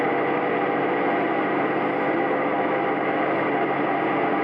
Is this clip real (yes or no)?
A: yes